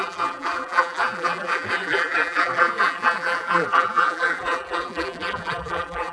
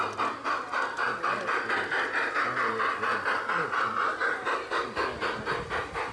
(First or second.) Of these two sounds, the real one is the second